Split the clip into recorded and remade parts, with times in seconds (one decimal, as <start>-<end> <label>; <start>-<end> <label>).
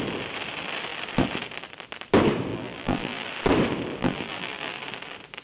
0.0-2.5 recorded; 2.5-3.3 remade; 3.3-4.0 recorded; 4.0-4.8 remade; 4.8-5.4 recorded